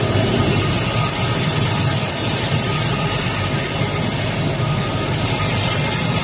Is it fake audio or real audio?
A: real